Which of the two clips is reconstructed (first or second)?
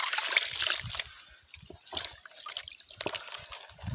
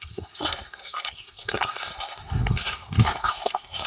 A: second